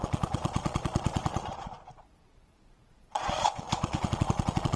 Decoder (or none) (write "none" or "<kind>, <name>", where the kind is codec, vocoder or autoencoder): vocoder, Vocos